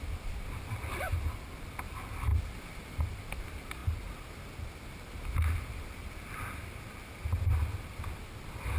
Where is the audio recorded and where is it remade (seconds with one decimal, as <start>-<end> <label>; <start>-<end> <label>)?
0.0-1.1 recorded; 1.1-1.9 remade; 1.9-2.3 recorded; 2.3-3.0 remade; 3.0-8.8 recorded